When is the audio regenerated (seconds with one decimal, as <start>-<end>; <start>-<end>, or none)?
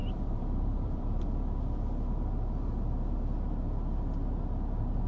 0.0-1.2